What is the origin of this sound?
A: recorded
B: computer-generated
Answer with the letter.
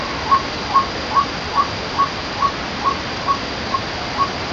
A